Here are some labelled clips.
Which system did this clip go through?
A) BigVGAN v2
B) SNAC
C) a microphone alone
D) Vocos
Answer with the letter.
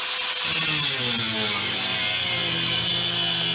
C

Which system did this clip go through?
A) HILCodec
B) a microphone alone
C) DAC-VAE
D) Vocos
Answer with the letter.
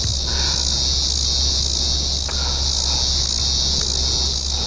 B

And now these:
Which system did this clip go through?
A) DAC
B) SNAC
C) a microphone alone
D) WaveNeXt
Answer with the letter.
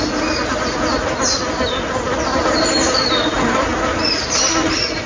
C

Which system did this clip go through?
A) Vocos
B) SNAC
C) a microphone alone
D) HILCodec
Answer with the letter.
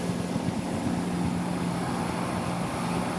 C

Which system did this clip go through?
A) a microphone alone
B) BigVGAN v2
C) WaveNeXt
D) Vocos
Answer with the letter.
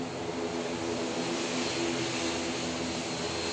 A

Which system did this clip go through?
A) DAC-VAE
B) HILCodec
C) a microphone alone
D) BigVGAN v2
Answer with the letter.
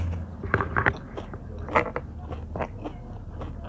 C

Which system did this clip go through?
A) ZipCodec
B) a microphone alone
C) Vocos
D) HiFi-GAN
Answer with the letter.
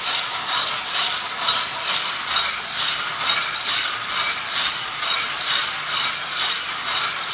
B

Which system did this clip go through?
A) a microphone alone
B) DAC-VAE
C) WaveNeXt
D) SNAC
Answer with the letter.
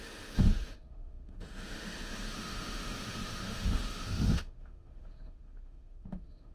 B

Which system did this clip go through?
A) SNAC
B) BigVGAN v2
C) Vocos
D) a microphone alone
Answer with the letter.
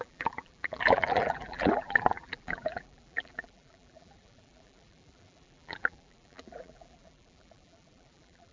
B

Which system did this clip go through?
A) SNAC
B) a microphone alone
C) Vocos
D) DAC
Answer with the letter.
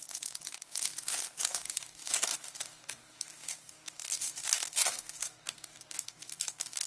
D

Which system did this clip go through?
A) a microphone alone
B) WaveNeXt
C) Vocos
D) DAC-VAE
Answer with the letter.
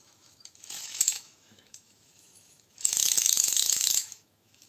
D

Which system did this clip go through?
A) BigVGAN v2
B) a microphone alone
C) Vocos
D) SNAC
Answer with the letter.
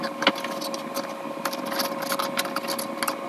B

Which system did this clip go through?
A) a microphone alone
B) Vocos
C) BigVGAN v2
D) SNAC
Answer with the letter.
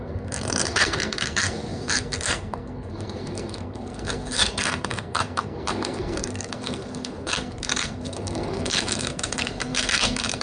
D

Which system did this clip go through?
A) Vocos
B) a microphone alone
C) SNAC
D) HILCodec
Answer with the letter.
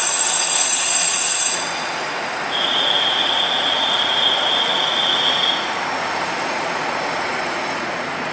A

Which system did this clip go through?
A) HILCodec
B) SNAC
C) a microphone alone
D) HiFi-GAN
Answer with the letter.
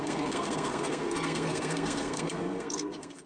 B